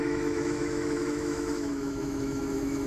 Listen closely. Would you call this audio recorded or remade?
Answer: remade